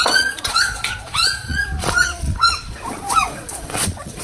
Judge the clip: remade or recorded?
remade